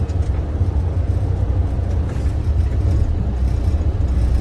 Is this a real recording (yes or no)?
yes